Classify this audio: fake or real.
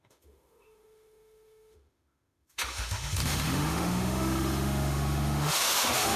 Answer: fake